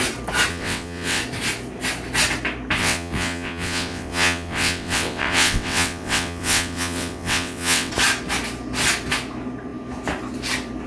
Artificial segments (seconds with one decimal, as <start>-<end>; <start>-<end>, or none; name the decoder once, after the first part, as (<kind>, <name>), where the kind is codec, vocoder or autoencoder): 0.5-1.2 (vocoder, WaveNeXt); 2.8-7.9